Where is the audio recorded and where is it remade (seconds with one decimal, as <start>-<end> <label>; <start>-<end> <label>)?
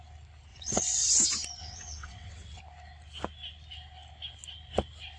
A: 0.0-0.5 recorded; 0.5-1.2 remade; 1.2-1.6 recorded; 1.6-2.6 remade; 2.6-5.2 recorded